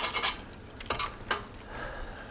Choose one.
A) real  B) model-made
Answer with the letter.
A